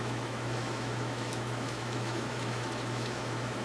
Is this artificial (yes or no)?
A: yes